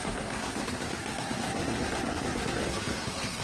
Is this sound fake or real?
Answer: fake